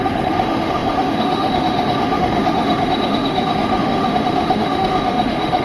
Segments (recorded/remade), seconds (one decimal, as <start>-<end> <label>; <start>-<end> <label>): 0.0-5.6 remade